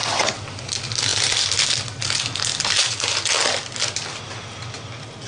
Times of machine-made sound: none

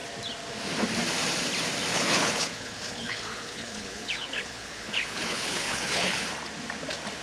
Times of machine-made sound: 1.9-6.2 (codec, HILCodec)

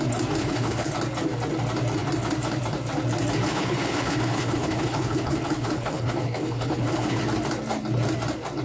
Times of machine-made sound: 0.4-0.9 (codec, HILCodec); 3.5-7.2

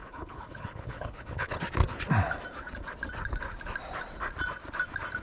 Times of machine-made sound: 0.0-1.6 (codec, HILCodec)

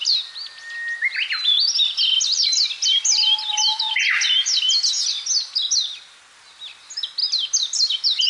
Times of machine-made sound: none

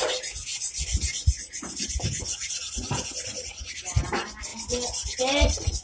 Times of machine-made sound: none